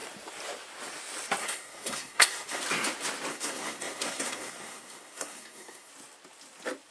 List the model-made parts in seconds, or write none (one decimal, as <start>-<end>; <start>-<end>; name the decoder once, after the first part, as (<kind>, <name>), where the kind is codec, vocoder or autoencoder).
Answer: 1.4-2.6 (codec, SNAC); 3.3-5.9